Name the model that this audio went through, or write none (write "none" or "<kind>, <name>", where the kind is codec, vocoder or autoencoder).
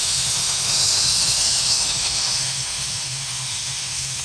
autoencoder, DAC-VAE